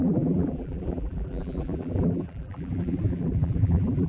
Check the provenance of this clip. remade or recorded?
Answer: remade